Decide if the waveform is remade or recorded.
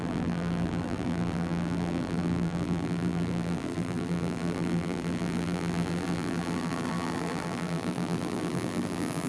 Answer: remade